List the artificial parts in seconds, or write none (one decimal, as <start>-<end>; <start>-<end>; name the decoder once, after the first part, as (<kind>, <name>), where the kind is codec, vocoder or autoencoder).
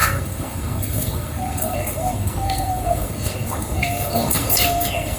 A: 0.0-5.2 (codec, SNAC)